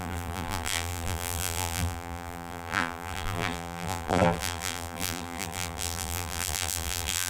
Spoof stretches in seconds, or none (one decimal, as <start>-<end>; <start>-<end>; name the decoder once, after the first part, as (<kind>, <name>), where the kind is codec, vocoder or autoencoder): 0.0-7.3 (vocoder, BigVGAN v2)